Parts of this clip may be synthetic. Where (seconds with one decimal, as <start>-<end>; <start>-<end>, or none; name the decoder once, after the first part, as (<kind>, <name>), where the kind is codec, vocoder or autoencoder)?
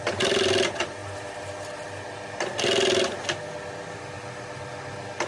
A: none